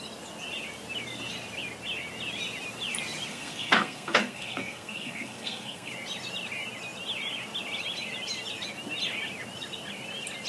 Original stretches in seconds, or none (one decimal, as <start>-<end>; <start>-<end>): 0.0-3.3; 5.9-10.5